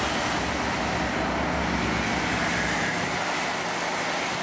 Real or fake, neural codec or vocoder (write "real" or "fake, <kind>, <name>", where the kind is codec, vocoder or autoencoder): real